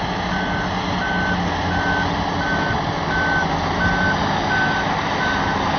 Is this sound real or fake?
real